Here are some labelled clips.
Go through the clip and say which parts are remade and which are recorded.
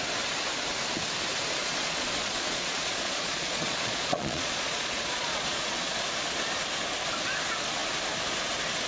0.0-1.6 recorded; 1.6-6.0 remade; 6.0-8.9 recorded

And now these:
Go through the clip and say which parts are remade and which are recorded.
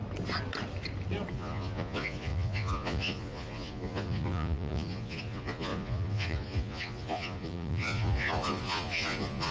0.0-1.3 recorded; 1.3-9.5 remade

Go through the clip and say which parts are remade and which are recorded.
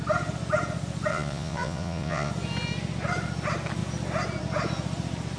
0.0-1.1 recorded; 1.1-2.3 remade; 2.3-5.4 recorded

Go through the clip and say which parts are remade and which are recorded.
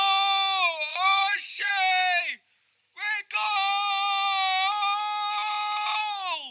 0.0-0.9 recorded; 0.9-1.7 remade; 1.7-6.5 recorded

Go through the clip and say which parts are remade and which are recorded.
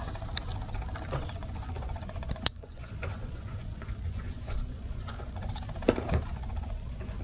0.0-1.2 recorded; 1.2-5.5 remade; 5.5-6.3 recorded; 6.3-7.2 remade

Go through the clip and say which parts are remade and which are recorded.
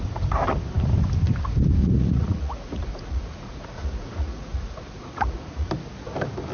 0.0-1.8 recorded; 1.8-5.7 remade; 5.7-6.5 recorded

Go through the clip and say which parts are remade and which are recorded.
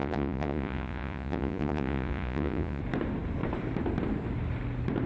0.0-2.8 remade; 2.8-5.1 recorded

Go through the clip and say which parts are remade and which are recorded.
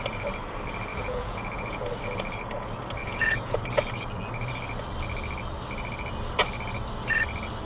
0.0-0.9 recorded; 0.9-1.8 remade; 1.8-3.0 recorded; 3.0-3.6 remade; 3.6-7.6 recorded